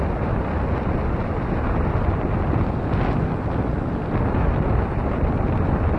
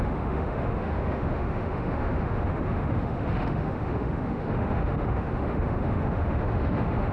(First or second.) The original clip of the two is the first